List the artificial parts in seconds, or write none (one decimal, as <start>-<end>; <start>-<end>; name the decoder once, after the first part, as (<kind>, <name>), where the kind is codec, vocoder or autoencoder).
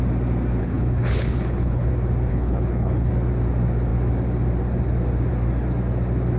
0.6-1.9 (codec, HILCodec); 2.3-3.1